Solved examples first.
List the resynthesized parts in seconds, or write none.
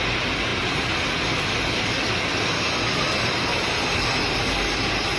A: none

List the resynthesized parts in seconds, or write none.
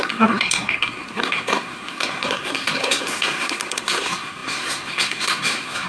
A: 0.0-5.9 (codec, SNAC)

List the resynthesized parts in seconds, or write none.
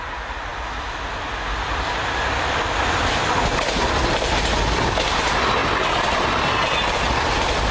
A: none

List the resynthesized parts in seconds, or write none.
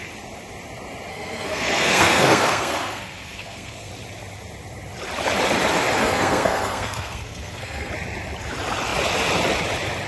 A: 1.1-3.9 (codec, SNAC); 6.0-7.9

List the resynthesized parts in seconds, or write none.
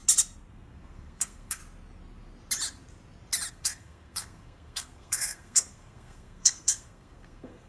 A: 0.5-1.6 (codec, SNAC); 3.5-7.7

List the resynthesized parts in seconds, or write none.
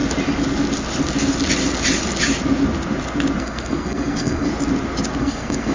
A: 3.4-4.5 (codec, SNAC); 5.2-5.7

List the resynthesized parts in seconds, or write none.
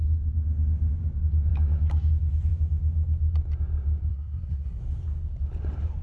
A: 4.1-4.8 (codec, SNAC)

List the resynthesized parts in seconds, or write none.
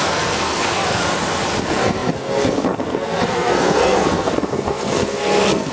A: 0.0-1.0 (codec, SNAC); 1.6-5.7